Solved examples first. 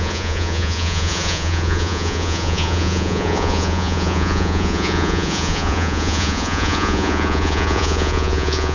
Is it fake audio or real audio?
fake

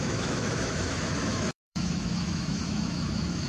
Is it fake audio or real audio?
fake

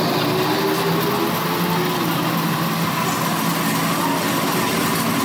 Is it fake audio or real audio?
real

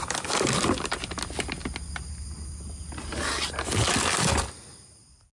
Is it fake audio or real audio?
real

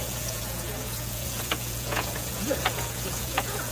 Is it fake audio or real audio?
fake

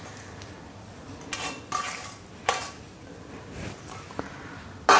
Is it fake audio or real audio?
real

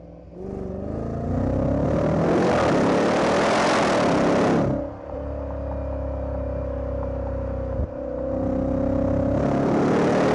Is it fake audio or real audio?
real